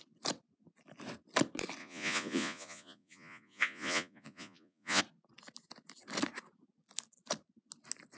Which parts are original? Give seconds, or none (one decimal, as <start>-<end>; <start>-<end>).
0.0-1.8; 5.0-8.2